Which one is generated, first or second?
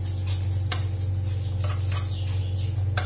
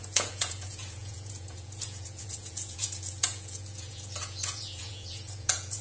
second